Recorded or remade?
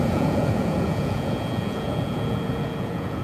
remade